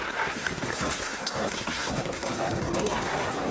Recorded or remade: remade